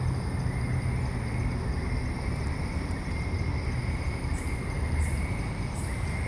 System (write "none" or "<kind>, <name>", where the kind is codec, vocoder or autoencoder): vocoder, BigVGAN v2